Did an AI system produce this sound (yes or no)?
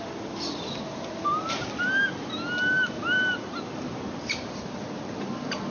no